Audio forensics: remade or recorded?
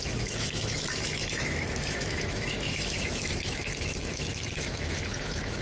remade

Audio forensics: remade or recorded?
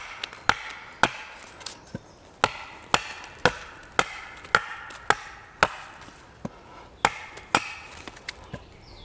recorded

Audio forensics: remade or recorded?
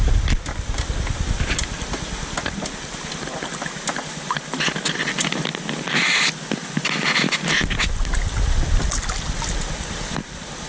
recorded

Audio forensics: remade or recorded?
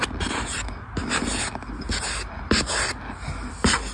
recorded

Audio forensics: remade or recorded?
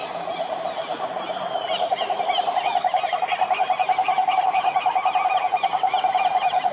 recorded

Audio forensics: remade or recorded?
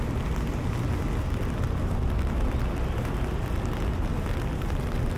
recorded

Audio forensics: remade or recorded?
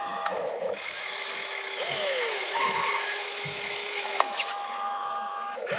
remade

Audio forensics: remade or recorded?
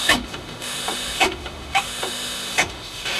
remade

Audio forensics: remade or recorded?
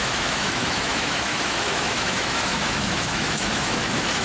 remade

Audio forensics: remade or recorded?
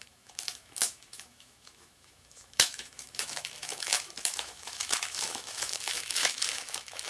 remade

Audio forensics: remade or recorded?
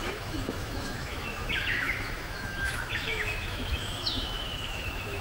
remade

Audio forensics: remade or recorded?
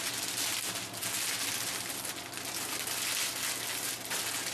recorded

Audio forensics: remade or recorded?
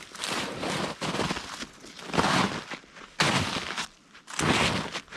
recorded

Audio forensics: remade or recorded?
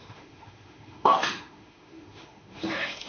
remade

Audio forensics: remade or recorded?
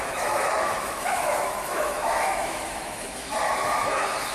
remade